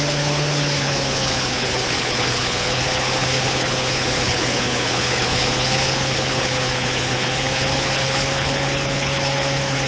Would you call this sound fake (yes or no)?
yes